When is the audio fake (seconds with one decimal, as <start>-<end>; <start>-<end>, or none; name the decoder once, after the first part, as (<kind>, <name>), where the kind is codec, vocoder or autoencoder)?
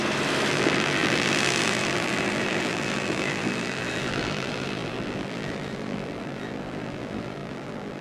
0.5-8.0 (vocoder, BigVGAN v2)